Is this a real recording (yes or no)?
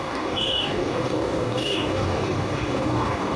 no